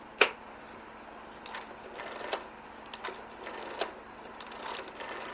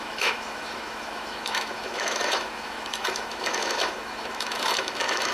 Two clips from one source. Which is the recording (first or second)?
first